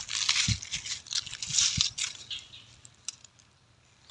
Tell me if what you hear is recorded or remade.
recorded